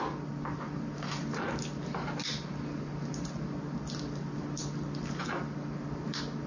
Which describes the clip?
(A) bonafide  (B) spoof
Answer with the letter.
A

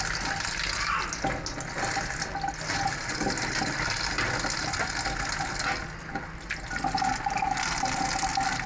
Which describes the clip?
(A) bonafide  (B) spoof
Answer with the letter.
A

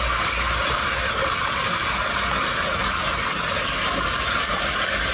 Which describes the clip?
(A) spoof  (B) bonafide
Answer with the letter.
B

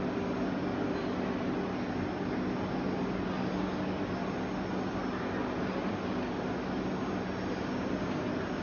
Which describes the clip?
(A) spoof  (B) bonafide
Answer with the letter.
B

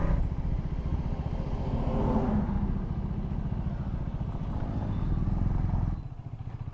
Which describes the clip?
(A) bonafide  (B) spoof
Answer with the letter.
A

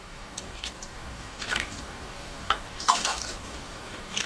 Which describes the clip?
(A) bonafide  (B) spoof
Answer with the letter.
B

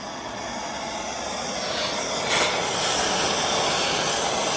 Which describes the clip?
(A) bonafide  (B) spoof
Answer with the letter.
A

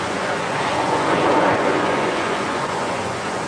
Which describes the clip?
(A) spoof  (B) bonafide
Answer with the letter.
A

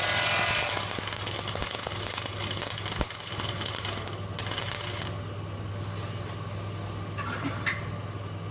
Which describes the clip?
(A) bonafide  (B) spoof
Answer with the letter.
A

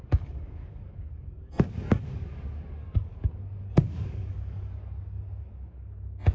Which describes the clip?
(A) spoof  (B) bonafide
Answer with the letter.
A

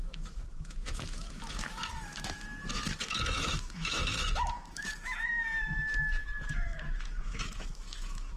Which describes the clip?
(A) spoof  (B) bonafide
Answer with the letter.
A